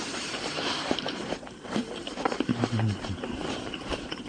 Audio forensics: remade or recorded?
remade